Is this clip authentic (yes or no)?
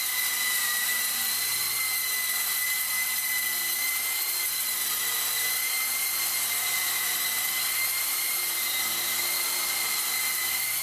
yes